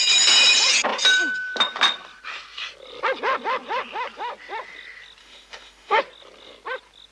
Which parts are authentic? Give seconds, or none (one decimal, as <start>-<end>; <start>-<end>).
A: 0.0-5.2; 6.0-7.1